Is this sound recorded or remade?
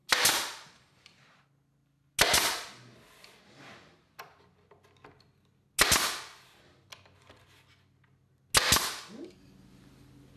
recorded